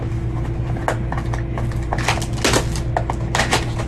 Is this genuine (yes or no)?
yes